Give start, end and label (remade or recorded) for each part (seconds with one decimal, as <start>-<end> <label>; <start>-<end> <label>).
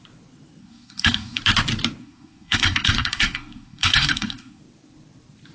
0.0-0.6 recorded; 0.6-1.4 remade; 1.4-2.0 recorded; 2.0-4.6 remade; 4.6-5.5 recorded